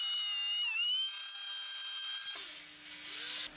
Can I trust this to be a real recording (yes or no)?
yes